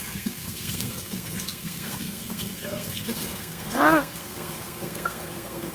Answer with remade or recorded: remade